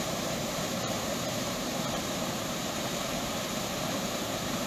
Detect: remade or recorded remade